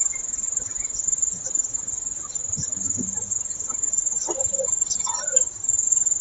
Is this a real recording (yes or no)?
no